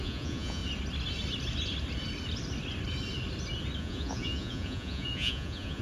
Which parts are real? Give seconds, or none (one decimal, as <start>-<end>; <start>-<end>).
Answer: 0.6-3.8